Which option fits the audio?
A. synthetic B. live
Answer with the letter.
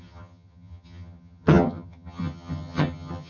A